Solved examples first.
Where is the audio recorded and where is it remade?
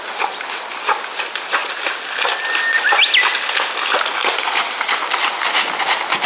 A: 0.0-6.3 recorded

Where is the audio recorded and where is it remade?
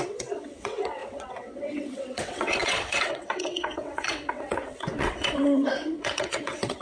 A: 0.0-6.8 remade